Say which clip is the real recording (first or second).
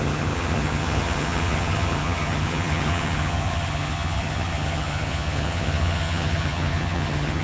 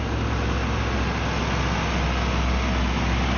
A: second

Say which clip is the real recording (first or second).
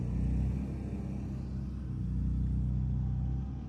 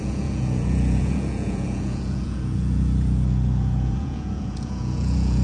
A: first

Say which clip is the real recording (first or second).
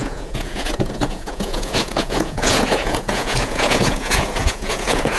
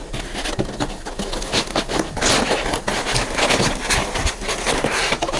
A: second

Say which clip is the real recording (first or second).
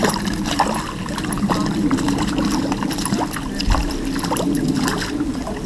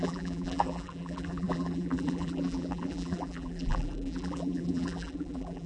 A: first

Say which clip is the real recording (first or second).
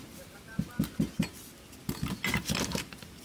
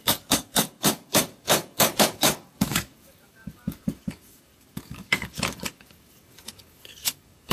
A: first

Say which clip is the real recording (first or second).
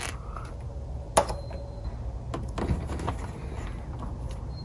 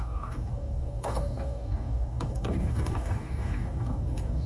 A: first